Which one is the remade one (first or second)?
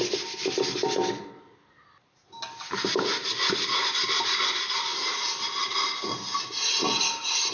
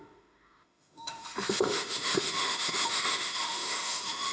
second